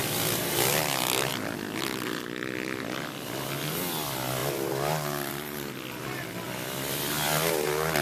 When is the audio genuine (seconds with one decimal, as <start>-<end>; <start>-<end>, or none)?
0.0-8.0